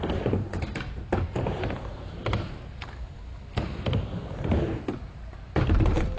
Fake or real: fake